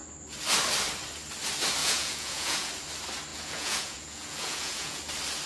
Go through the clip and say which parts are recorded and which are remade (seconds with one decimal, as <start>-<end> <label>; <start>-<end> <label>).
0.0-1.8 recorded; 1.8-2.7 remade; 2.7-3.3 recorded; 3.3-5.0 remade; 5.0-5.5 recorded